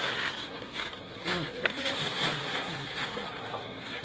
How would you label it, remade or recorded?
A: remade